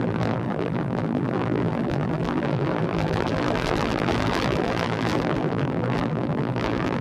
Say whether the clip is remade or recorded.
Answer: remade